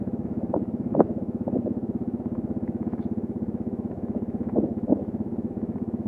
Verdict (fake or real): fake